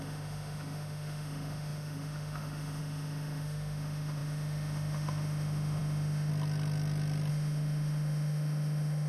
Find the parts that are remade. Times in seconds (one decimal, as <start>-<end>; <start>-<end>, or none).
0.0-6.3; 7.3-9.1